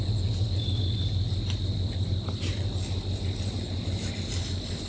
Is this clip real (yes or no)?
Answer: yes